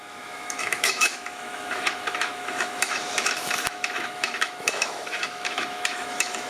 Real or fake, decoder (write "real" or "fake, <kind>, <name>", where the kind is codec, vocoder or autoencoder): fake, autoencoder, DAC-VAE